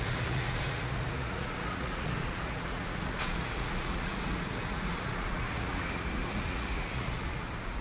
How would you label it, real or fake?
fake